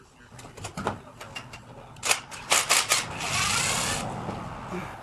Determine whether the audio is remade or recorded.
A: recorded